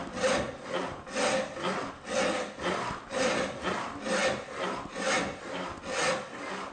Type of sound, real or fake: real